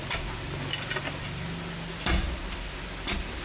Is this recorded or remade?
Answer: recorded